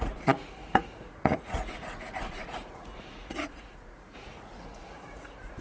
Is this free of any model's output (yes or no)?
no